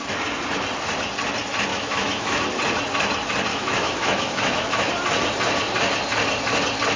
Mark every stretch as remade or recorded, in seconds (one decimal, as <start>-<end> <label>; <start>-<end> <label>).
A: 0.0-1.7 recorded; 1.7-2.4 remade; 2.4-3.5 recorded; 3.5-4.9 remade; 4.9-7.0 recorded